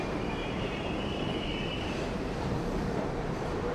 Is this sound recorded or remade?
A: remade